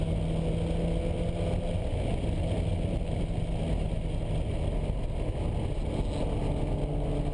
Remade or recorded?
recorded